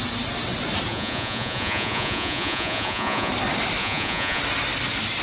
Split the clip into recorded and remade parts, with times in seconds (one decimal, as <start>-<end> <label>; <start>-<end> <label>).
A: 0.0-0.9 recorded; 0.9-3.3 remade; 3.3-3.8 recorded; 3.8-4.4 remade; 4.4-5.2 recorded